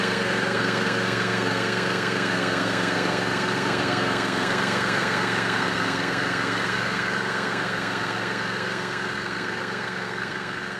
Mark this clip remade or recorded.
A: remade